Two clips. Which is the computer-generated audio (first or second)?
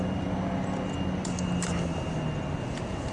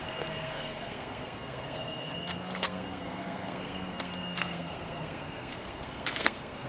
second